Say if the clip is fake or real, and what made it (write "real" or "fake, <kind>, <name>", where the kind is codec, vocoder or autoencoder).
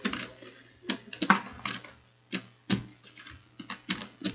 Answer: real